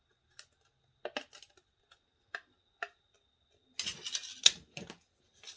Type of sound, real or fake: real